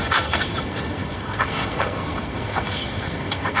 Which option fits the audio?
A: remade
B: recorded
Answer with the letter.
A